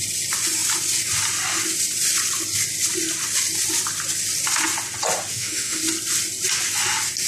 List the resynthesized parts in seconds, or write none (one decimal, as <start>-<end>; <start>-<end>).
5.3-5.8

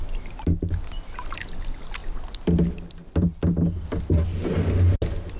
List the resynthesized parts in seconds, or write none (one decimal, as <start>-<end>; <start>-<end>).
none

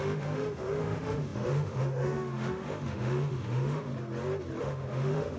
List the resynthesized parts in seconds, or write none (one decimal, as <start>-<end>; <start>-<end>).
0.0-3.9; 4.6-5.4

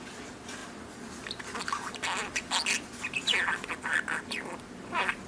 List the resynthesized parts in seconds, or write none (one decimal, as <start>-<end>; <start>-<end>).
none

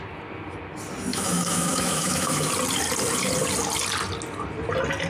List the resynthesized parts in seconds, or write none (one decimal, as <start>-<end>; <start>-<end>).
1.1-2.5

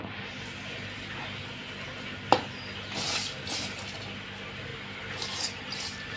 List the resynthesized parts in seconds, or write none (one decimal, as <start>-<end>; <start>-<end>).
none